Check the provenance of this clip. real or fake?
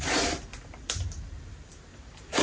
real